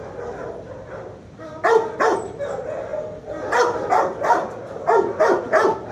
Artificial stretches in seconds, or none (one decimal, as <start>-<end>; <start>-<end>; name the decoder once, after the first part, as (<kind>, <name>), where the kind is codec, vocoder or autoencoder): 0.0-2.5 (vocoder, BigVGAN v2)